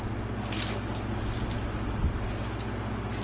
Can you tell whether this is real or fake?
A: real